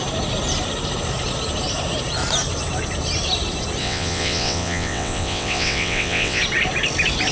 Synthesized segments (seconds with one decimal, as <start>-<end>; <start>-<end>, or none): 3.8-6.4